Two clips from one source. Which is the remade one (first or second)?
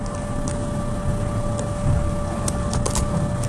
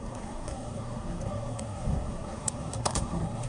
second